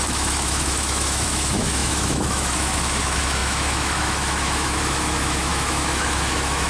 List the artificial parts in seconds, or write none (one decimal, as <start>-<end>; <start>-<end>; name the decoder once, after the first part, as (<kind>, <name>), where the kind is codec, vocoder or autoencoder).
0.0-6.7 (autoencoder, DAC-VAE)